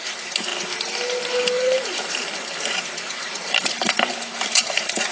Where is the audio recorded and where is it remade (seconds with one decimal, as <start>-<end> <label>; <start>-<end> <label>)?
0.0-5.1 recorded